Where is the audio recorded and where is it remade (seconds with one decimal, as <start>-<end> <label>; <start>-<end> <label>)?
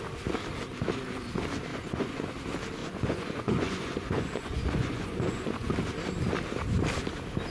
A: 0.0-1.7 recorded; 1.7-2.3 remade; 2.3-2.8 recorded; 2.8-5.7 remade; 5.7-7.5 recorded